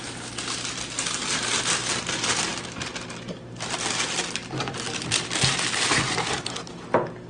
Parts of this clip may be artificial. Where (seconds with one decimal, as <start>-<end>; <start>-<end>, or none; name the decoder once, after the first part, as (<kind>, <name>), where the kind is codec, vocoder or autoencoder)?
none